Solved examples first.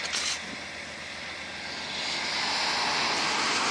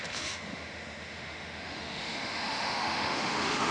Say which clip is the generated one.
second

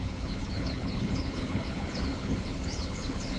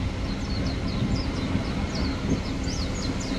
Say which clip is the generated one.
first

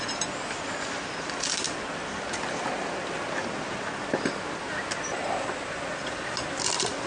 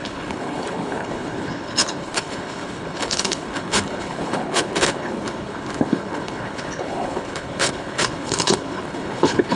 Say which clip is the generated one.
second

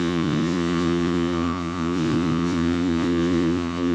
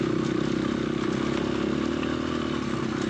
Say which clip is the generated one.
first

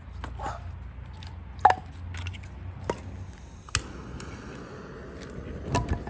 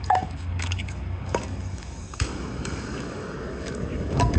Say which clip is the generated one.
second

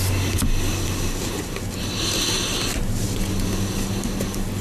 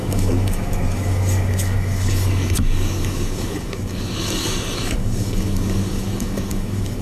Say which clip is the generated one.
second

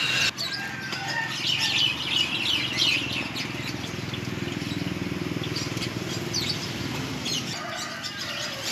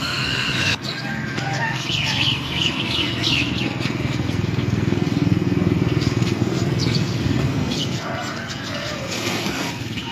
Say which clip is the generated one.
second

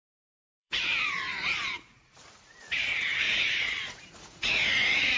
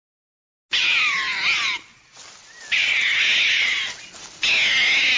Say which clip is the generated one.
first